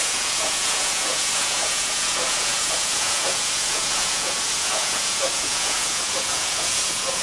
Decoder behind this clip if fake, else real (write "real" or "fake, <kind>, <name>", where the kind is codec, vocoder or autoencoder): fake, vocoder, Vocos